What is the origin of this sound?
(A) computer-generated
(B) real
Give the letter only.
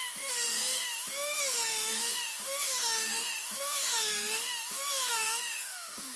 A